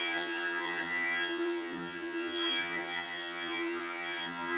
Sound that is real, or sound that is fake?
fake